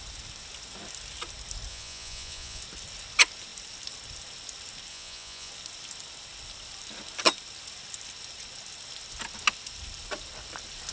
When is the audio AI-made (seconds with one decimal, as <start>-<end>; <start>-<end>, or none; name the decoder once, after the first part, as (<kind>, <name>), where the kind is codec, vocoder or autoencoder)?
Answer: 1.7-2.6 (vocoder, Vocos); 4.9-5.5